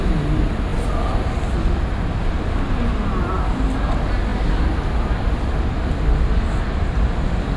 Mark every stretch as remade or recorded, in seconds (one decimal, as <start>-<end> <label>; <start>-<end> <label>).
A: 0.0-7.6 recorded